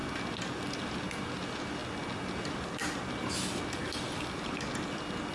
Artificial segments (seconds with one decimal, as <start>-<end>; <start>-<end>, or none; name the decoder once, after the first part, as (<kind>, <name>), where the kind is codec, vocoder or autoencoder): none